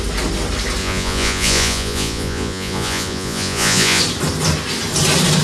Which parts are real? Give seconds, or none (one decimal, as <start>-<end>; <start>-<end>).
0.0-0.8; 4.0-5.4